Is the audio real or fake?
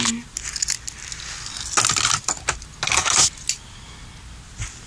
real